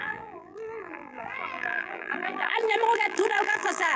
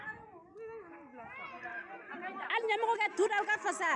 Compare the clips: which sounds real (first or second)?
second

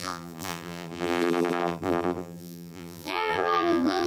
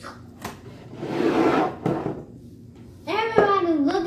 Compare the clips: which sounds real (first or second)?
second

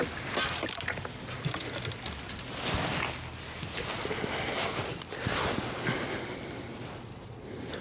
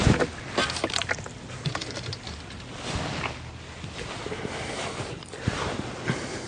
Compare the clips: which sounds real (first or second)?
first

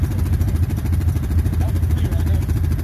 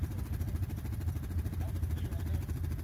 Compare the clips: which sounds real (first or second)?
first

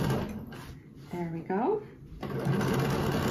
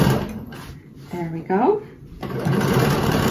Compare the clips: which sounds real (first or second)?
first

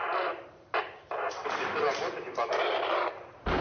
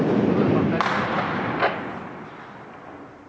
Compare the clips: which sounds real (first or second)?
second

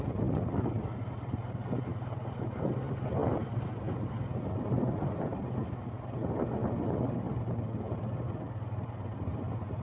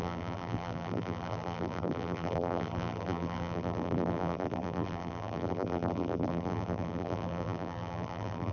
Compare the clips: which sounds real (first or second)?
first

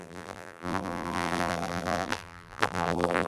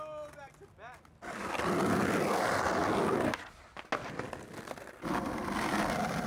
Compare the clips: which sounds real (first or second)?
second